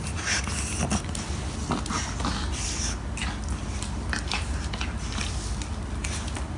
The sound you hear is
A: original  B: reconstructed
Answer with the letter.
A